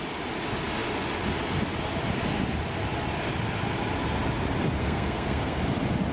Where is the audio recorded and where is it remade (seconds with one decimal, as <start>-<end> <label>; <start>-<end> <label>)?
0.0-4.8 recorded; 4.8-5.6 remade; 5.6-6.1 recorded